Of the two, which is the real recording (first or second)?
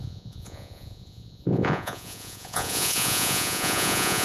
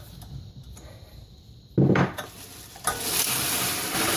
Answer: second